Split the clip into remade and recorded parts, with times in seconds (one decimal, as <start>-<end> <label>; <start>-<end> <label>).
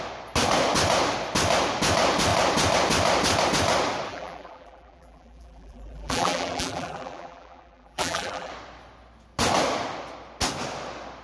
0.0-4.1 recorded; 4.1-8.5 remade; 8.5-11.2 recorded